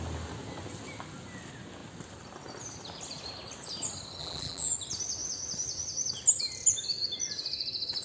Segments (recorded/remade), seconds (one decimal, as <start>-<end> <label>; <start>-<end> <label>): 0.0-4.2 recorded; 4.2-4.7 remade; 4.7-8.0 recorded